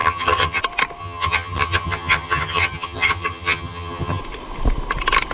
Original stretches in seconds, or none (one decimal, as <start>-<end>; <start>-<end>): 0.6-1.0; 4.2-5.3

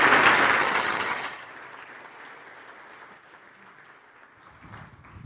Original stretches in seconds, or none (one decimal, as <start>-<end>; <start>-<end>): 0.0-0.6; 1.5-5.3

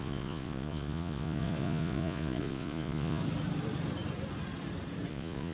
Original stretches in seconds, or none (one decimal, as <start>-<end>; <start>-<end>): 3.2-5.1